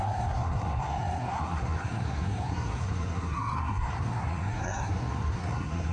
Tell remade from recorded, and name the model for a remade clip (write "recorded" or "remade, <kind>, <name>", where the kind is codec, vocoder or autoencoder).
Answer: remade, codec, SNAC